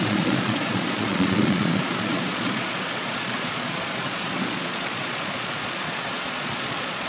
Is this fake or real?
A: fake